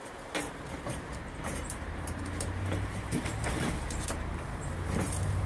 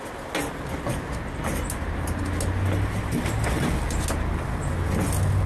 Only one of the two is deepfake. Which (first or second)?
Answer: first